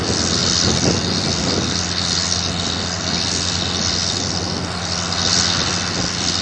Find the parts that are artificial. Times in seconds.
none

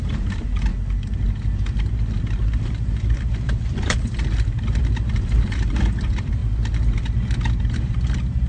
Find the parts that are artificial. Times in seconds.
0.0-0.7 (vocoder, BigVGAN v2); 2.6-6.4; 7.8-8.5

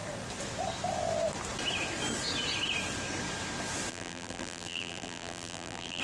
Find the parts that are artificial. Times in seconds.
3.9-6.0 (vocoder, BigVGAN v2)

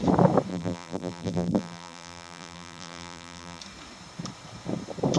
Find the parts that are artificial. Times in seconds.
0.5-3.6 (vocoder, BigVGAN v2)

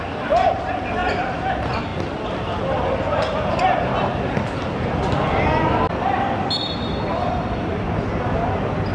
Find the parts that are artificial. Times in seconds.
none